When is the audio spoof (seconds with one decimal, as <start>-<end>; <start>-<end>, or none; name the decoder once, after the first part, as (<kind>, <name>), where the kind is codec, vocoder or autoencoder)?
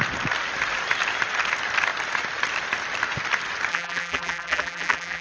3.7-5.2 (vocoder, BigVGAN v2)